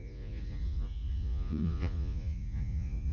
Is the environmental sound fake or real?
fake